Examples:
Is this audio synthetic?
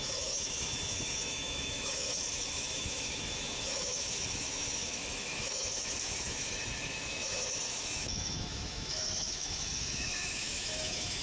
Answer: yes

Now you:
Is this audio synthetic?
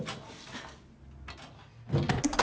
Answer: no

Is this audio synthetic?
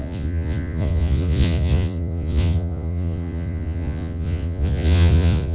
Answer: yes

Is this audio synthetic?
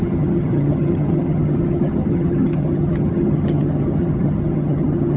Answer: yes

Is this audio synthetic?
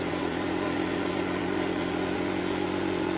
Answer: yes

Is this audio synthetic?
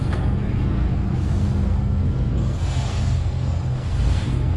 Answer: yes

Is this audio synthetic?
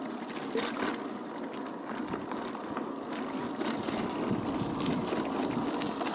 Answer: no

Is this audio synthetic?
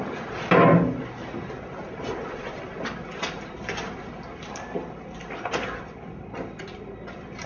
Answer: no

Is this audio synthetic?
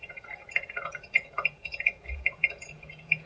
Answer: yes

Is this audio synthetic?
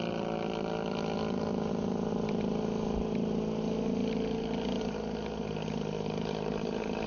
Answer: no